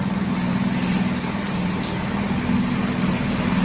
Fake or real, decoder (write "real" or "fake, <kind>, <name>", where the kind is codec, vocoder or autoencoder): real